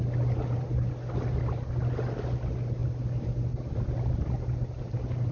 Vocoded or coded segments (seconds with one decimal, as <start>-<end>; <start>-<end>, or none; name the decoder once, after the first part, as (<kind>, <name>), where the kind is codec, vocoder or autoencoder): none